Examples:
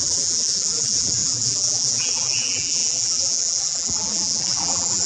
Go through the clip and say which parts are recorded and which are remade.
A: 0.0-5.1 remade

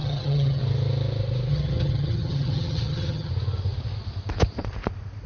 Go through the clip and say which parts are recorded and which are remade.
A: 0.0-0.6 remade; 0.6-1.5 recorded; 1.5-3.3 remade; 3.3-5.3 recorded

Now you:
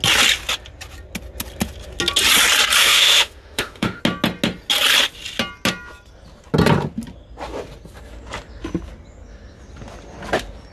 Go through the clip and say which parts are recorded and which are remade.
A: 0.0-2.8 recorded; 2.8-4.0 remade; 4.0-10.7 recorded